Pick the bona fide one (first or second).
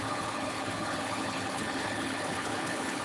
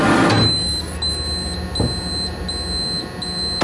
second